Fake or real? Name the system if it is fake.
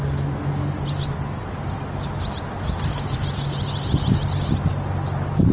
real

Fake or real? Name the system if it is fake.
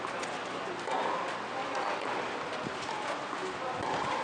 real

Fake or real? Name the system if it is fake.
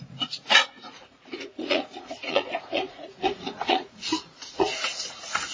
fake, vocoder, Vocos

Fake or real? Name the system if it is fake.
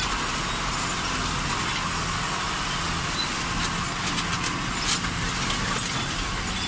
real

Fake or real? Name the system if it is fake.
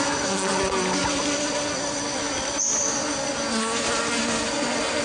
real